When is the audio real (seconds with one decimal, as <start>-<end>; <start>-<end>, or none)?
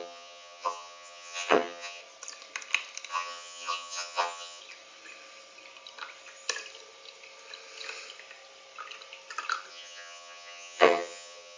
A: 2.0-3.1; 4.6-9.7